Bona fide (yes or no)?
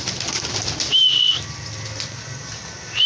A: yes